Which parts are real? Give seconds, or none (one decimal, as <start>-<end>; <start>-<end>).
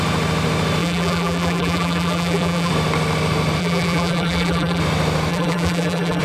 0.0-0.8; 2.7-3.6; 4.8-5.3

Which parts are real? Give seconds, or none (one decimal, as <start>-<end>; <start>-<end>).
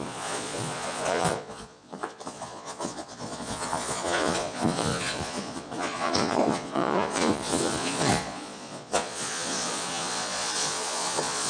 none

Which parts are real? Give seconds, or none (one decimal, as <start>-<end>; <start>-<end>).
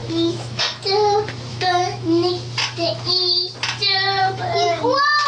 0.6-1.5; 2.3-4.2; 4.8-5.3